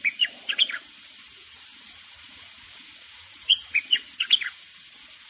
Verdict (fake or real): fake